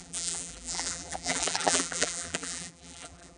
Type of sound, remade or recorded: remade